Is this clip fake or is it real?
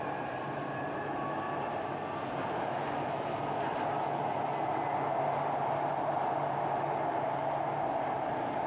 real